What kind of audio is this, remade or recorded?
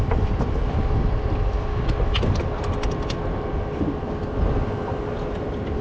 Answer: recorded